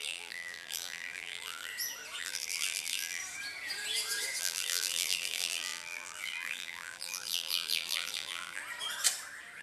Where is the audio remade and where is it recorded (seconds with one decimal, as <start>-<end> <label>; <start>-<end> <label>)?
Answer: 0.0-1.7 remade; 1.7-2.2 recorded; 2.2-3.2 remade; 3.2-4.4 recorded; 4.4-8.6 remade; 8.6-9.6 recorded